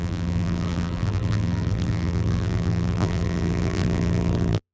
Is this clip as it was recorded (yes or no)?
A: no